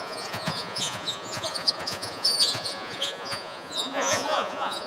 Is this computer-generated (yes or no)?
yes